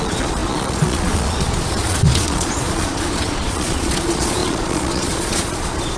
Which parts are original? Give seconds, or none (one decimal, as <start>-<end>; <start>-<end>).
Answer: none